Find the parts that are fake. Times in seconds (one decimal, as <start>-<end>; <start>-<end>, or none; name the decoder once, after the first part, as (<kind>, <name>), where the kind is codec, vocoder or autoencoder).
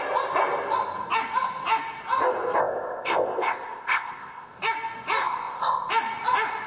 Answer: 2.6-4.6 (codec, ZipCodec); 5.2-5.9